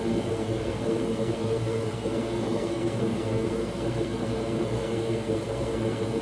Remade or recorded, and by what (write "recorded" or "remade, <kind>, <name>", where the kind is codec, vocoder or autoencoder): remade, codec, SNAC